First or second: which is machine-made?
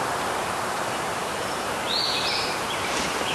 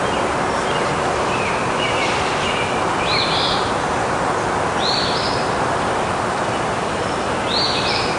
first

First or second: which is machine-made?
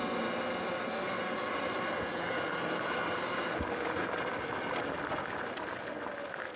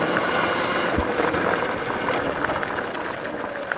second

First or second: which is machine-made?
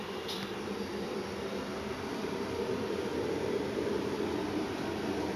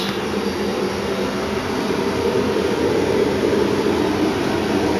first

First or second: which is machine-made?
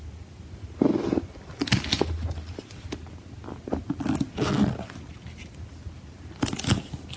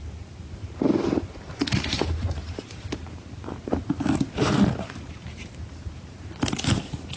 second